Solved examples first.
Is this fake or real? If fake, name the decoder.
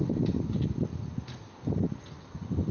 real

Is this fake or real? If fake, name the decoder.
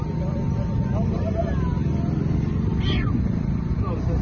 real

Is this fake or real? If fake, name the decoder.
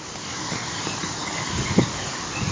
fake, codec, DAC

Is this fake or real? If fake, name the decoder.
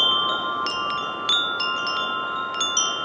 real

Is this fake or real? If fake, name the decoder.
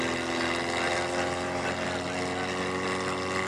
real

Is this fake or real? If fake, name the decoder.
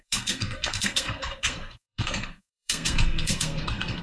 fake, codec, SNAC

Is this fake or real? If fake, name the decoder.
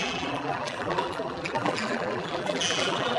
fake, vocoder, BigVGAN v2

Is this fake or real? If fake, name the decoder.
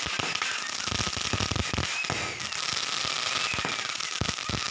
real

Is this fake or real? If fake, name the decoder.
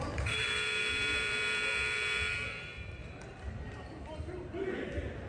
fake, vocoder, BigVGAN v2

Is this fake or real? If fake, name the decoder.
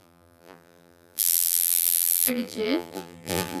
fake, vocoder, BigVGAN v2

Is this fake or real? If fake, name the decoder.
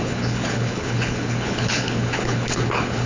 fake, codec, HILCodec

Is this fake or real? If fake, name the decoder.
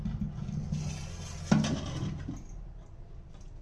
real